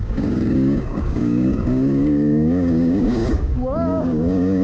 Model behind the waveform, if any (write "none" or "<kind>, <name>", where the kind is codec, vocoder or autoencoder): codec, DAC